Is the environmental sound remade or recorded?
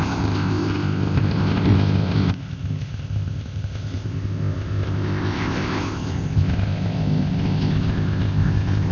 remade